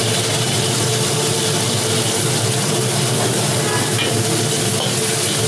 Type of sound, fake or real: real